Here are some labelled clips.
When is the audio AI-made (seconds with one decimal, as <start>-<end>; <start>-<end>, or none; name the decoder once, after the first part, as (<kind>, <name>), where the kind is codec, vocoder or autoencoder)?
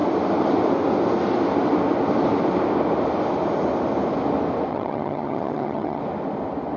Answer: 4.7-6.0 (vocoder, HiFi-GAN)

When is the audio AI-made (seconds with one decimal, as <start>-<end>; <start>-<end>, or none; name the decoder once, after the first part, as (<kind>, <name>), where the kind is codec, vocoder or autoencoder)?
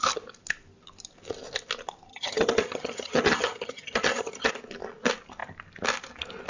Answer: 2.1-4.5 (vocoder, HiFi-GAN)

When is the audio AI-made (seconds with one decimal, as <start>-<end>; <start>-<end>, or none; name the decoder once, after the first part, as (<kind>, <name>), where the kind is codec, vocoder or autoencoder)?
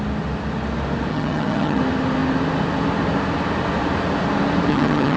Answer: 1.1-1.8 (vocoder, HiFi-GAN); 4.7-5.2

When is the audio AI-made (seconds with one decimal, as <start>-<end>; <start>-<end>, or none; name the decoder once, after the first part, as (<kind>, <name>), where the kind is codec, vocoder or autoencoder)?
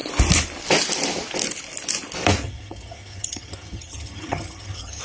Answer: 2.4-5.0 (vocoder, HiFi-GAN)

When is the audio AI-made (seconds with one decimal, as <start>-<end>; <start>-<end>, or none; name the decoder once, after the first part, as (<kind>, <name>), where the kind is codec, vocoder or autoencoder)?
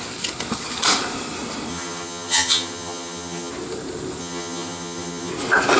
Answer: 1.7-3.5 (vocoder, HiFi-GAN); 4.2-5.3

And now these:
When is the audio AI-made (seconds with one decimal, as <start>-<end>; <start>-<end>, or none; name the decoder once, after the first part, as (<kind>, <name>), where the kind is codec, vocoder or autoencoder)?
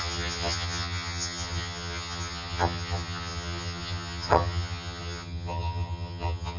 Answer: 0.0-6.6 (vocoder, HiFi-GAN)